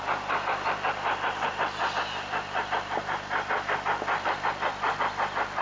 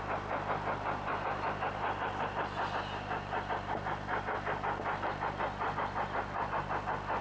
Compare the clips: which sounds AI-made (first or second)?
first